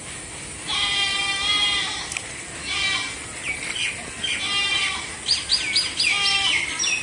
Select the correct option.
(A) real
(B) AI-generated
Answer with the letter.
A